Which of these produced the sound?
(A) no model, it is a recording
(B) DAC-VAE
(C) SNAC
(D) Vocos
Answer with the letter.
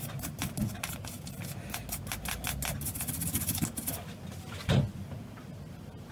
A